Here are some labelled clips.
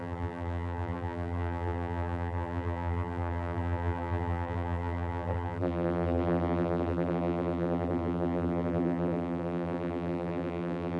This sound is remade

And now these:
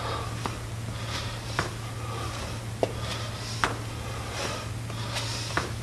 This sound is recorded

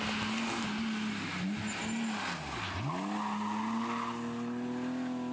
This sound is recorded